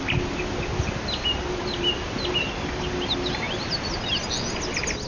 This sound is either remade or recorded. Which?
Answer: recorded